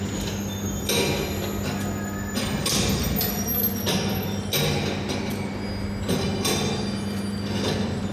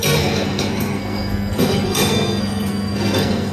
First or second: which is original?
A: first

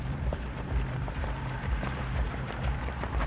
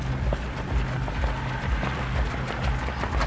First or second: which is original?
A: second